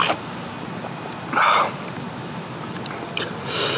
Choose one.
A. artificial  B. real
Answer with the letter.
B